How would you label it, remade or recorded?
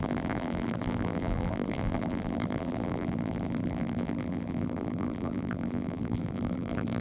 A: remade